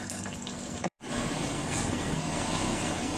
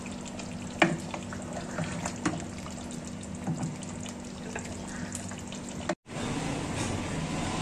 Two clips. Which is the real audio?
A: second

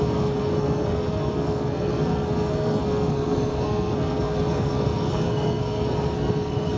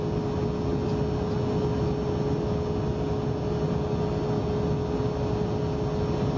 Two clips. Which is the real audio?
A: second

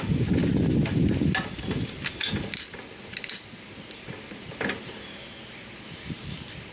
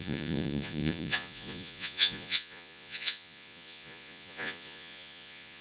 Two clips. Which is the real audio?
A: first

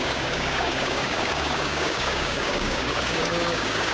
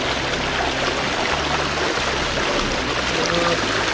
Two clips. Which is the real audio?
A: second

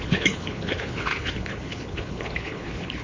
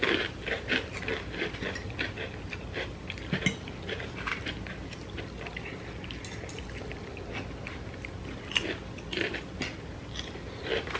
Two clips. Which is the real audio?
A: second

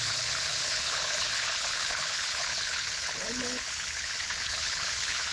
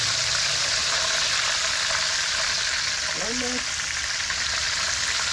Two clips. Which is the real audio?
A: second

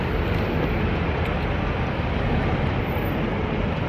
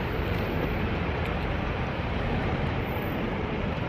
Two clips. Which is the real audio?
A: first